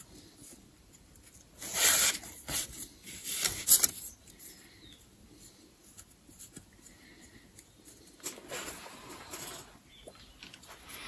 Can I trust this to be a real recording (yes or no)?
yes